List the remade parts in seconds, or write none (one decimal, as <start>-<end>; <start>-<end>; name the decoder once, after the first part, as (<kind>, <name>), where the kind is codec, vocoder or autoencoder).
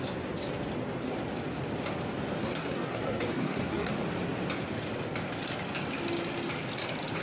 2.4-3.9 (codec, SNAC)